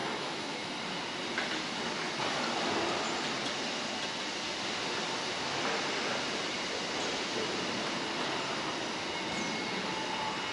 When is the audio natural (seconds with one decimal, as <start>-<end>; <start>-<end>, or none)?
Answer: 0.7-10.5

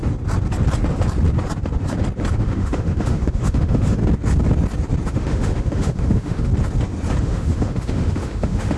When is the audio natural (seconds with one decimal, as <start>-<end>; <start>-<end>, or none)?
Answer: 0.0-2.3; 4.0-5.1; 6.5-7.2